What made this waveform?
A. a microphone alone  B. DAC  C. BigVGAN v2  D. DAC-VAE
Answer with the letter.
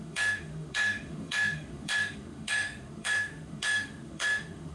D